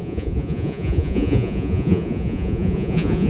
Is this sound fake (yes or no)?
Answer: yes